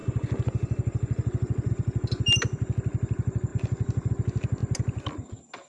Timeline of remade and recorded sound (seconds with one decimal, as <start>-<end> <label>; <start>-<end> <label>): 0.0-5.7 recorded